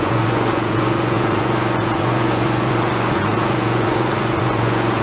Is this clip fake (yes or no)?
yes